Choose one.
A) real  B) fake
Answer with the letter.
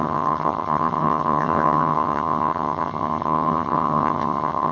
B